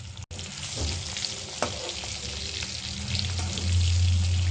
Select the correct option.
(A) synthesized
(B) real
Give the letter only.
B